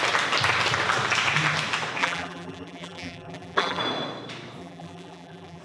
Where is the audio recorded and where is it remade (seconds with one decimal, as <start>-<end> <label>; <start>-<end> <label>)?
0.0-2.0 recorded; 2.0-3.8 remade; 3.8-4.6 recorded; 4.6-5.6 remade